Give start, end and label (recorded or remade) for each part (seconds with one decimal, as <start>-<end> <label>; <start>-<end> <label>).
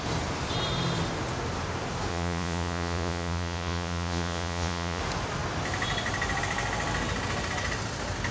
0.0-2.1 recorded; 2.1-5.0 remade; 5.0-8.3 recorded